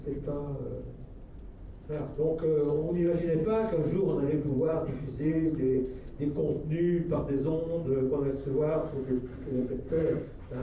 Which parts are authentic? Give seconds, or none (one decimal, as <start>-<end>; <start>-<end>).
0.0-2.9; 5.8-8.8; 10.2-10.6